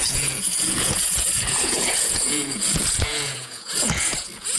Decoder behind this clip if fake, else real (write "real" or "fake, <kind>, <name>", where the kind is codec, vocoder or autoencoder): fake, vocoder, Vocos